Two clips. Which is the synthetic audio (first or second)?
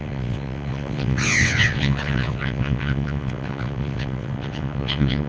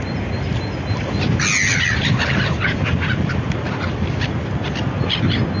first